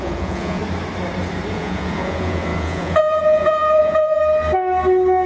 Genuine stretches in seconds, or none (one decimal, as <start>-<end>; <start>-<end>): 0.6-1.5; 4.2-5.3